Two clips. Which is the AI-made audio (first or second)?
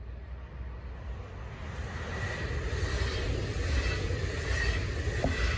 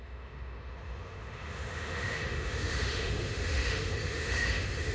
second